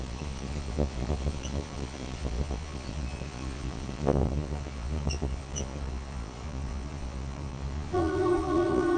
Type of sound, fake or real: fake